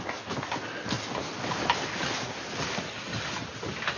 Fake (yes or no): no